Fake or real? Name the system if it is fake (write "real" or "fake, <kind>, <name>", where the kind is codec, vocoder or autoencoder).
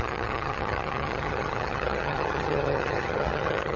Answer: fake, vocoder, HiFi-GAN